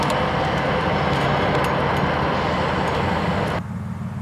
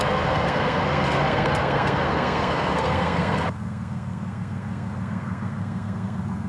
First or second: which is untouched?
first